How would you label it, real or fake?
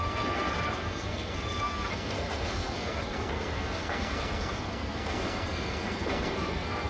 fake